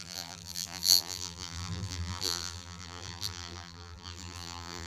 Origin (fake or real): fake